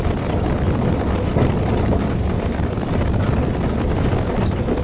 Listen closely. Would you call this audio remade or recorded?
recorded